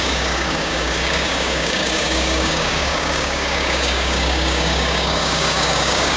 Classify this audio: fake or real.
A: fake